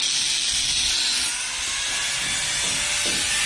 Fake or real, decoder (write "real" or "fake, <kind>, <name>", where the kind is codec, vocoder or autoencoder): real